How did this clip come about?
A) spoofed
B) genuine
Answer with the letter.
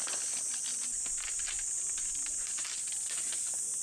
B